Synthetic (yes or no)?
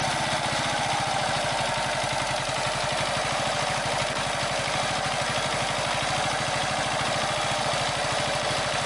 no